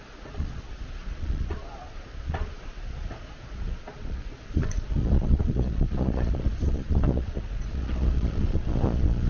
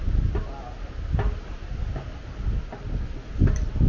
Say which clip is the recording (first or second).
second